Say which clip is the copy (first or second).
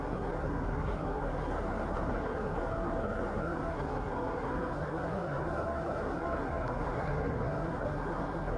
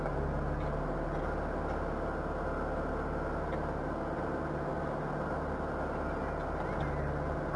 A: first